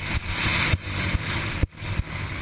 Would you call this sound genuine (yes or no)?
yes